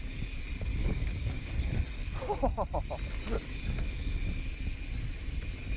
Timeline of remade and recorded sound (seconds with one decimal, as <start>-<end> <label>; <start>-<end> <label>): 0.0-0.8 recorded; 0.8-1.5 remade; 1.5-5.8 recorded